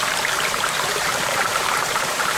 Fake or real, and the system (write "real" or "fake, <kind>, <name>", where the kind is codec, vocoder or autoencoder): fake, vocoder, BigVGAN v2